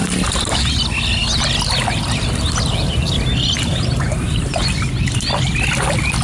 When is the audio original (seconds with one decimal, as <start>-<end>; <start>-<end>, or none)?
0.0-6.2